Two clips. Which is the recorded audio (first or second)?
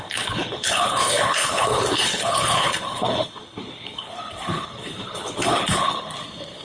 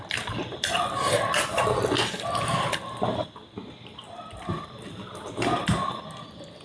second